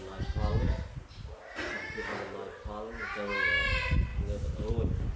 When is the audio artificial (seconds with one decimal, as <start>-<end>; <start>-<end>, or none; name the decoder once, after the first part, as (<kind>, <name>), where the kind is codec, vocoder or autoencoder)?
none